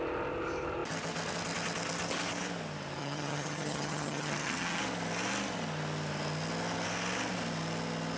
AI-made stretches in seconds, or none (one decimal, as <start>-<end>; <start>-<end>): 3.0-4.8